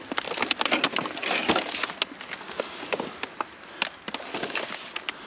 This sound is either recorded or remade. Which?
recorded